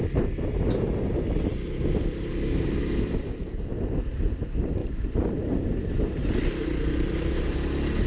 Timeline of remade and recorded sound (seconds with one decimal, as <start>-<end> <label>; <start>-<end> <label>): 0.0-8.1 recorded